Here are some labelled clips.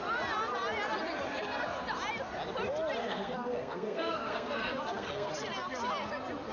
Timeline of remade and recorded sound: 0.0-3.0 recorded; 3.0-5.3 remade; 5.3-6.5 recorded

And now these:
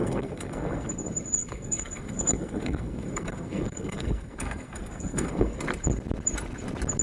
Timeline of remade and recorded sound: 0.0-0.9 remade; 0.9-1.4 recorded; 1.4-5.6 remade; 5.6-7.0 recorded

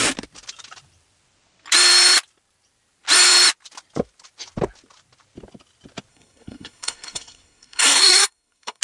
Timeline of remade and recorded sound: 0.0-6.1 recorded; 6.1-8.8 remade

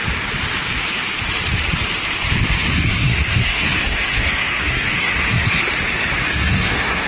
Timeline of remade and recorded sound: 0.0-2.7 recorded; 2.7-5.6 remade; 5.6-6.3 recorded; 6.3-7.1 remade

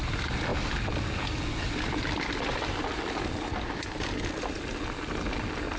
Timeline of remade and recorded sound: 0.0-5.8 recorded

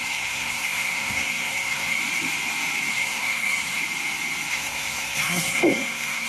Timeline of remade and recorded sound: 0.0-2.0 remade; 2.0-2.9 recorded; 2.9-3.8 remade; 3.8-4.5 recorded; 4.5-6.3 remade